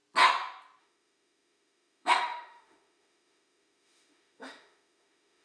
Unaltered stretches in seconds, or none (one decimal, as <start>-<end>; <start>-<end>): 0.0-0.8